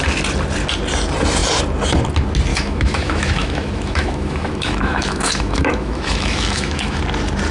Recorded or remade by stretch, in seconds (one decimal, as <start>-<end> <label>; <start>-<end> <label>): 0.0-2.5 recorded; 2.5-7.0 remade; 7.0-7.5 recorded